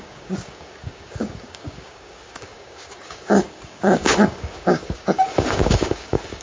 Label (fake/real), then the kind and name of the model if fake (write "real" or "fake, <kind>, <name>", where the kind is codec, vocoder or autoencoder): fake, codec, DAC